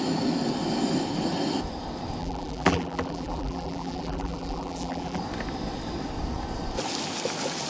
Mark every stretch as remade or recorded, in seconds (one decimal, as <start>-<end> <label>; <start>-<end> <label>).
0.0-2.2 recorded; 2.2-5.2 remade; 5.2-7.7 recorded